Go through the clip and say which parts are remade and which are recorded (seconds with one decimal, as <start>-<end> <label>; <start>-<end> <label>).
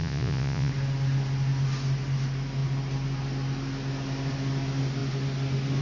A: 0.0-0.7 remade; 0.7-5.8 recorded